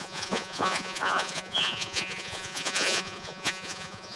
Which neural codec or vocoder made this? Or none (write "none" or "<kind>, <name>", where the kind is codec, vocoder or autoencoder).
vocoder, Vocos